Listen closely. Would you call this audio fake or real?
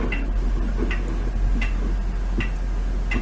real